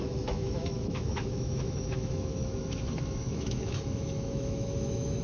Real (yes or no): no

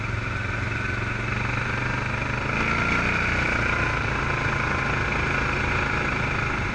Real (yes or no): yes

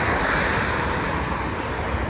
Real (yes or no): yes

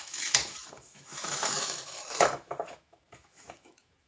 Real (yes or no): no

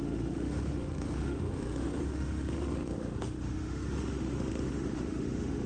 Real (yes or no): no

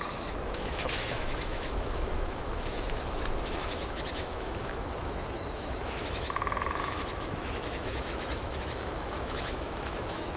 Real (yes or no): no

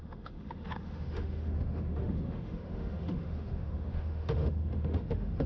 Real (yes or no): no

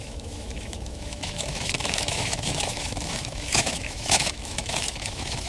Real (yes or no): no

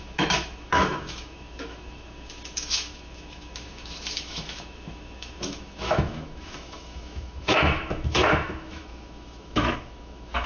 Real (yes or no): no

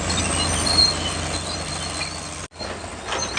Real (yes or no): yes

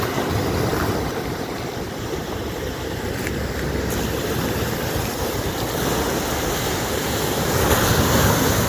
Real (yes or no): yes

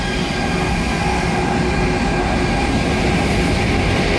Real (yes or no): yes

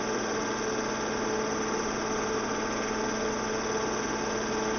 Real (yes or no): yes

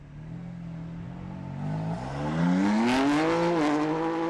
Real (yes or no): yes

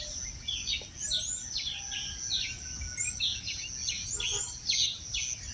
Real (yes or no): yes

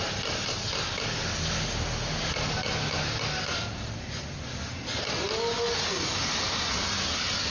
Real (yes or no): yes